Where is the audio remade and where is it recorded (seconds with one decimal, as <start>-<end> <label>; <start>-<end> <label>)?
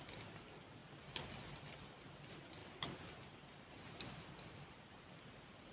0.0-5.7 recorded